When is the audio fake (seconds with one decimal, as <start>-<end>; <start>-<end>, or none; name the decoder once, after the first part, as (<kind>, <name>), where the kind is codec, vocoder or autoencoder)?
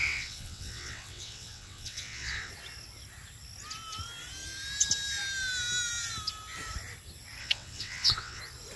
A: 0.0-2.5 (vocoder, WaveNeXt); 7.4-8.4